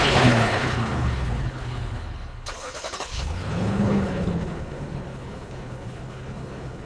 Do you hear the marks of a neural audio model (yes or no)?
yes